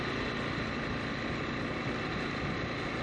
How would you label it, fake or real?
real